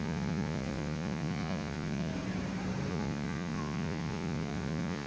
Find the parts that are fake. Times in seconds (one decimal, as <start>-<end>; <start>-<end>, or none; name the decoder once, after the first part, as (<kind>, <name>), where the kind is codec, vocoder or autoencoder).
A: 0.0-2.1 (vocoder, Vocos); 2.9-5.1